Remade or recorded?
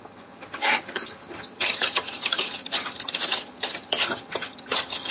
remade